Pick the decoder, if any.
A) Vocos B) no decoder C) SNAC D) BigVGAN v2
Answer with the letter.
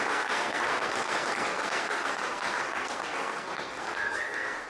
C